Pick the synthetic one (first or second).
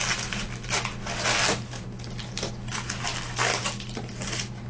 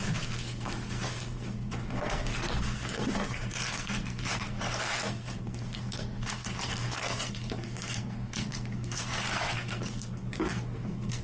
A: second